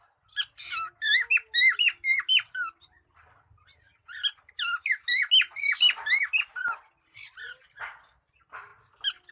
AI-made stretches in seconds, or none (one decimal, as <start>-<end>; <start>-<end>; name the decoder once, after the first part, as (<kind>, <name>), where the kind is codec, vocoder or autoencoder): none